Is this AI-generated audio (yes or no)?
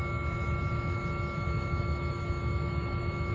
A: yes